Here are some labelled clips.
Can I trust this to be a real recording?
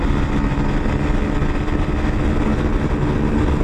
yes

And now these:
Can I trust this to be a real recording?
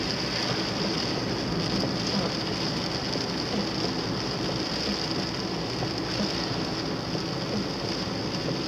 yes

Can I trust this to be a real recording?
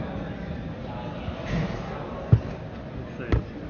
yes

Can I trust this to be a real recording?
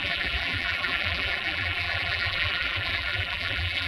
no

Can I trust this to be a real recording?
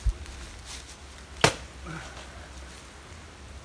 yes